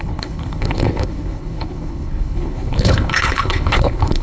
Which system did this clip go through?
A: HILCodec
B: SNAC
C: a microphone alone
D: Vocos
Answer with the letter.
A